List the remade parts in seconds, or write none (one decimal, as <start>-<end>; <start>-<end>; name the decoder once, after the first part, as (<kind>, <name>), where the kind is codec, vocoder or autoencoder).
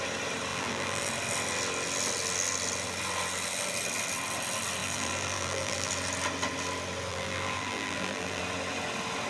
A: 0.5-1.1 (vocoder, BigVGAN v2); 4.8-5.9; 7.1-8.4